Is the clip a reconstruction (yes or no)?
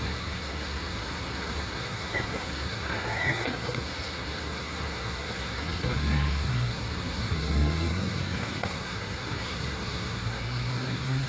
yes